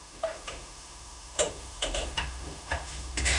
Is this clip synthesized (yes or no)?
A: yes